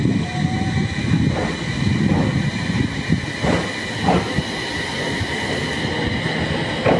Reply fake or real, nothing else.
real